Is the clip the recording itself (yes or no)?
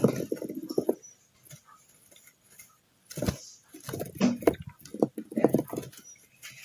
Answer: yes